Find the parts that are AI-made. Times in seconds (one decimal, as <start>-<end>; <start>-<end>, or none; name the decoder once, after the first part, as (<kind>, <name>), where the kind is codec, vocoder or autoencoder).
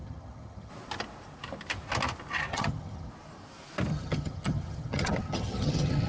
0.0-0.7 (vocoder, HiFi-GAN); 2.5-3.1; 3.9-6.1